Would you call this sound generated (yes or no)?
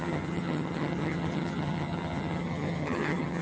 yes